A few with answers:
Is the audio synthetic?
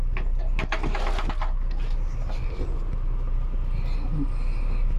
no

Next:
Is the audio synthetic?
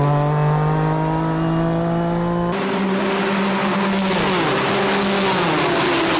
no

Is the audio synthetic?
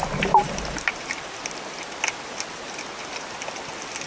no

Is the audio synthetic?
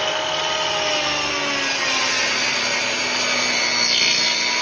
no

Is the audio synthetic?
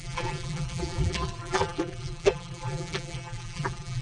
yes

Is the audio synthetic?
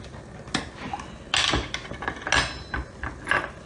no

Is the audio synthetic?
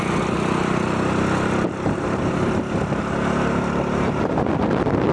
no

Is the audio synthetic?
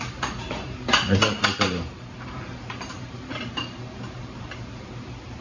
yes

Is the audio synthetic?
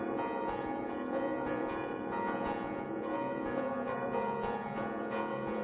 yes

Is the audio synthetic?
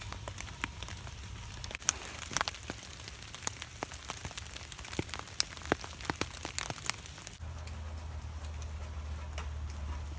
no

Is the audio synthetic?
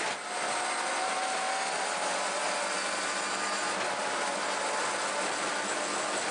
no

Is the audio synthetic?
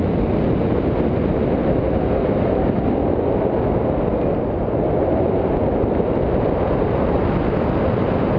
no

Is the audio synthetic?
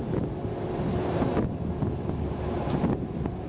no